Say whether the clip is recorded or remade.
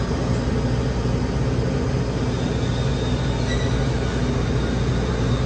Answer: recorded